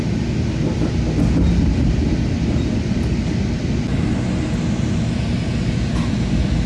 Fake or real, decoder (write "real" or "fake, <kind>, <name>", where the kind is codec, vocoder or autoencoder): real